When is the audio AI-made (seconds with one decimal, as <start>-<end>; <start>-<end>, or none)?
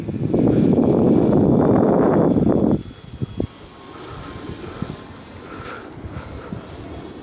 5.7-6.3